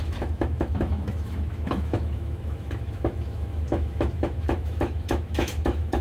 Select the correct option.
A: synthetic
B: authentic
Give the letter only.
A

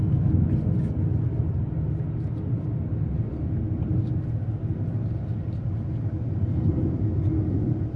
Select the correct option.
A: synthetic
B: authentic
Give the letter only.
B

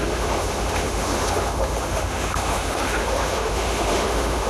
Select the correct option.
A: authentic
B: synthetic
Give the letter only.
B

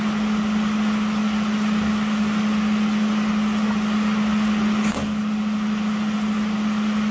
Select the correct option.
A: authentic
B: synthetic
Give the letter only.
A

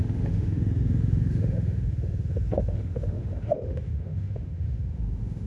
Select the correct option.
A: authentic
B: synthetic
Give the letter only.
B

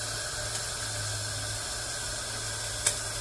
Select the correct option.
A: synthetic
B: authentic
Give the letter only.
B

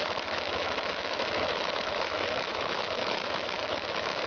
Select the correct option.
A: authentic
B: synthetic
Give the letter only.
B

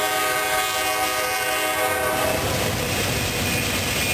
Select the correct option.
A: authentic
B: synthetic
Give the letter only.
A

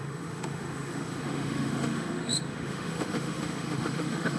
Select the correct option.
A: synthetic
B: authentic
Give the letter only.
A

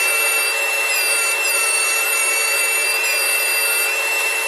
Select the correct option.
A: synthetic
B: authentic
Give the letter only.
B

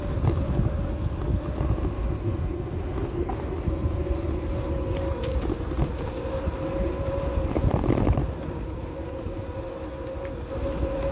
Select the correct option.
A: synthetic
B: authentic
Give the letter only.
B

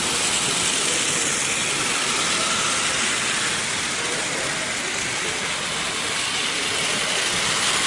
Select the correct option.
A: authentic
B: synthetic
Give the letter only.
A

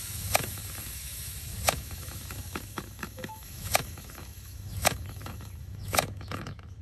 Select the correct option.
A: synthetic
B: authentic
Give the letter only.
A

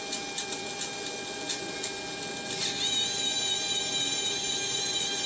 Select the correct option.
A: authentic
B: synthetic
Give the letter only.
A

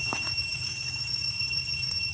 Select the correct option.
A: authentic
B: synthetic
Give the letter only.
B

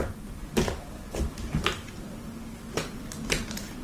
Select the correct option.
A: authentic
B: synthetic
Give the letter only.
A